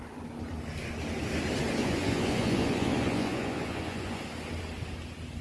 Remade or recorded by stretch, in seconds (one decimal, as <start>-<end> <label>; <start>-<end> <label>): 0.0-1.8 recorded; 1.8-4.2 remade; 4.2-5.4 recorded